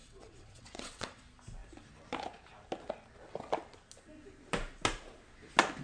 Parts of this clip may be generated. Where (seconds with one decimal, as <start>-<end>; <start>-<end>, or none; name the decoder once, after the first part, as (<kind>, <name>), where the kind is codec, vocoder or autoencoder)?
0.0-1.2 (vocoder, WaveNeXt)